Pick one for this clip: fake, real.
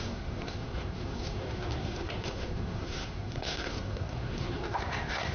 fake